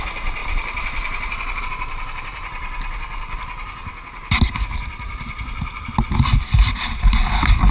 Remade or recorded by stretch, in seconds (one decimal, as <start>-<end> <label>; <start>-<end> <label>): 0.0-0.4 recorded; 0.4-1.6 remade; 1.6-7.7 recorded